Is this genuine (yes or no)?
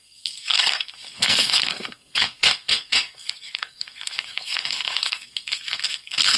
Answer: no